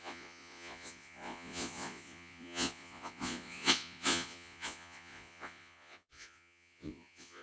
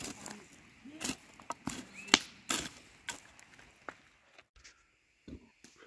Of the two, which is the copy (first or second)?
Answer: first